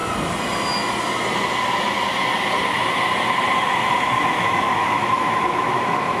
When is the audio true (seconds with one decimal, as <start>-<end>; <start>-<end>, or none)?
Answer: 0.0-3.6